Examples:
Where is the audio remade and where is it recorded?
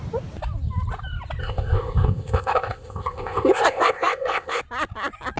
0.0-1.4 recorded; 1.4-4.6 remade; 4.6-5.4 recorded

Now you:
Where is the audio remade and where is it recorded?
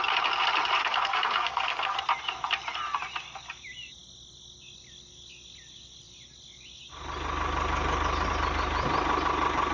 0.0-0.8 recorded; 0.8-2.0 remade; 2.0-9.7 recorded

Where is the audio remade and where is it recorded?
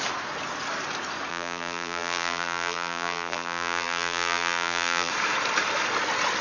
0.0-1.3 recorded; 1.3-5.1 remade; 5.1-6.4 recorded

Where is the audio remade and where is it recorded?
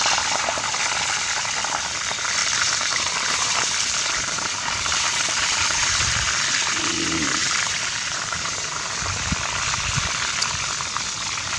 0.0-2.4 recorded; 2.4-6.1 remade; 6.1-7.4 recorded; 7.4-9.0 remade; 9.0-11.6 recorded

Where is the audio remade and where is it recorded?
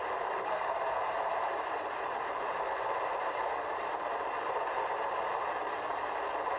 0.0-6.6 remade